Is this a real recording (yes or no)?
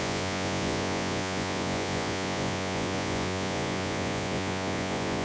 no